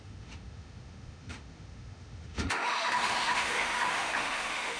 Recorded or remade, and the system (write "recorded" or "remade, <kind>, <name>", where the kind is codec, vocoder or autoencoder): remade, autoencoder, DAC-VAE